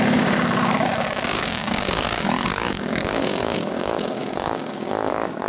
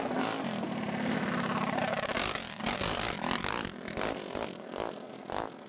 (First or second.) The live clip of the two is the second